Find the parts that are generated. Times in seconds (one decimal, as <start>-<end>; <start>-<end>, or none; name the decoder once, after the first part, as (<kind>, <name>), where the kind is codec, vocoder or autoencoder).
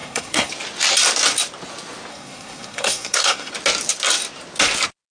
0.0-0.5 (codec, SNAC); 2.1-3.5